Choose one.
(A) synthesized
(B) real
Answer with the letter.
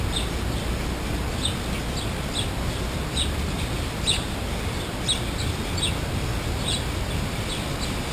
B